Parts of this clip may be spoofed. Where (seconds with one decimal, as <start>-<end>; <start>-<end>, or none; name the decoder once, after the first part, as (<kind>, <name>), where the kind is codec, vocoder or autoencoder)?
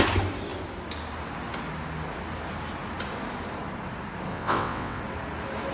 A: 4.3-5.0 (vocoder, WaveNeXt)